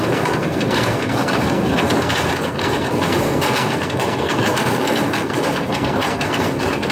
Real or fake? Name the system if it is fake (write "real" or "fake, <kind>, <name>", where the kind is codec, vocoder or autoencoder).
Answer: fake, codec, SNAC